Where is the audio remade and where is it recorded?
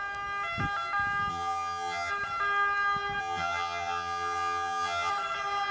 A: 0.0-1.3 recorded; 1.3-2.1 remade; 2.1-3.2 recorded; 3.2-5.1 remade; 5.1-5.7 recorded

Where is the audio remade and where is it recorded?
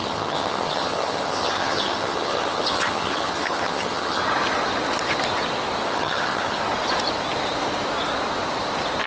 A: 0.0-4.2 remade; 4.2-5.9 recorded; 5.9-6.6 remade; 6.6-9.1 recorded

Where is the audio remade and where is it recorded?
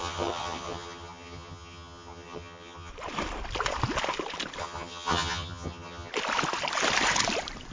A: 0.0-2.9 remade; 2.9-4.6 recorded; 4.6-6.1 remade; 6.1-7.7 recorded